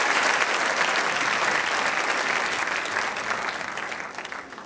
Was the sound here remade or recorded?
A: recorded